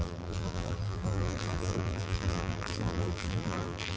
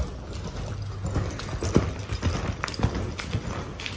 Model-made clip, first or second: first